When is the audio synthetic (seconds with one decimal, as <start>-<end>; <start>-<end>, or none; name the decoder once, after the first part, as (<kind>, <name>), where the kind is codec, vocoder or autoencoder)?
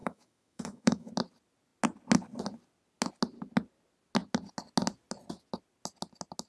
0.0-1.1 (autoencoder, DAC-VAE)